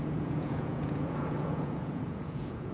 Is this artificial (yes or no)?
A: yes